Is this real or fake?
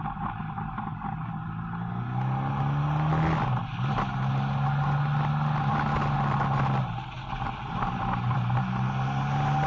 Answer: real